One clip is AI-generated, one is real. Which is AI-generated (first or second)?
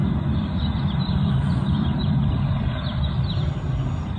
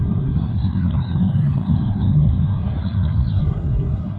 second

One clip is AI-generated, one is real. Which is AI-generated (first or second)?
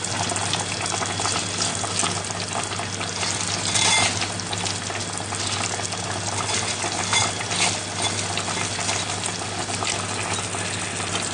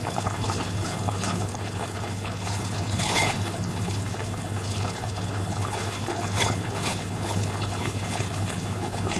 second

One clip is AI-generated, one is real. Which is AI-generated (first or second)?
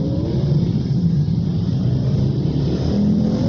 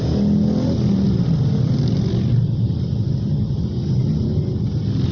first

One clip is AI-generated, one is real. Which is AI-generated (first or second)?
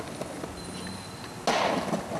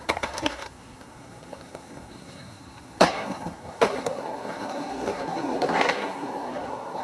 second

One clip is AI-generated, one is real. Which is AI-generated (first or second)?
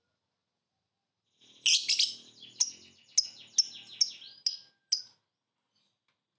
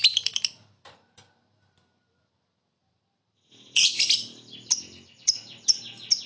second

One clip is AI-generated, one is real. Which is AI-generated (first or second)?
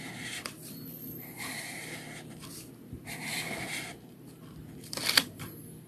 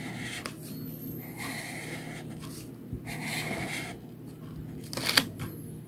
first